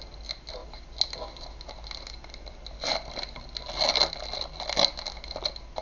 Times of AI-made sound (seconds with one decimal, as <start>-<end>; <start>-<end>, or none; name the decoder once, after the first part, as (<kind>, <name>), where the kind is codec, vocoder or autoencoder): none